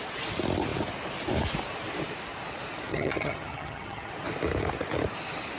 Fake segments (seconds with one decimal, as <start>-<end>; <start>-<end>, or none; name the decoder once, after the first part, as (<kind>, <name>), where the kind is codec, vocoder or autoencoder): 2.9-4.1 (vocoder, HiFi-GAN)